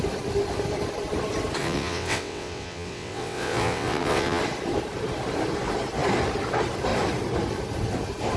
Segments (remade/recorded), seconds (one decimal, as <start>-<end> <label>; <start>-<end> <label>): 0.0-1.6 recorded; 1.6-4.4 remade; 4.4-8.4 recorded